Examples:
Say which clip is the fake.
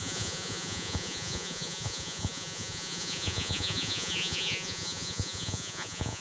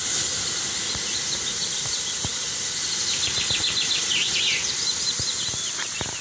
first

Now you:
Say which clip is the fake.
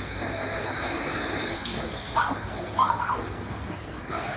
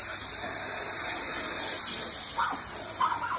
first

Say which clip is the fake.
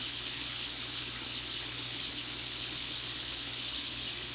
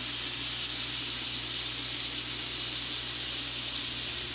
first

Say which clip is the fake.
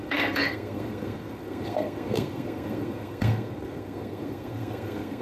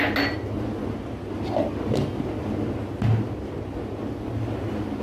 first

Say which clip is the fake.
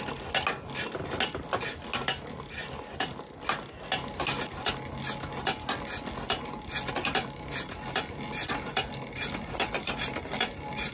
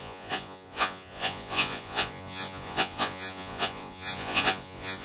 second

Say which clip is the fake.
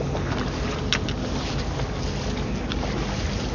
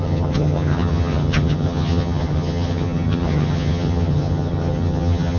second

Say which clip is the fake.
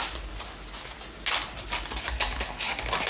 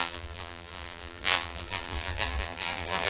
second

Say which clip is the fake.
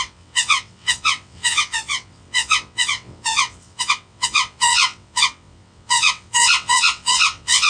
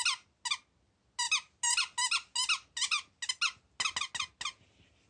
first